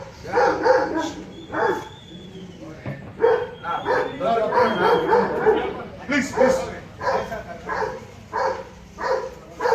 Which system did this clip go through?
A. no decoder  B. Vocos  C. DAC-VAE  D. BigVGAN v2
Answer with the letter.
A